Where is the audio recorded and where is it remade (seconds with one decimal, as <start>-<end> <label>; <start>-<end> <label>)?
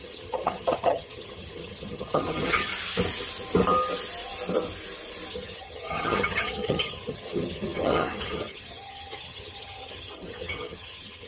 0.0-2.7 remade; 2.7-5.3 recorded; 5.3-11.3 remade